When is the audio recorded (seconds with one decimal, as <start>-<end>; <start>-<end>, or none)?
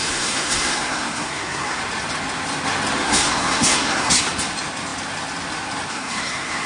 1.8-3.0; 4.2-5.9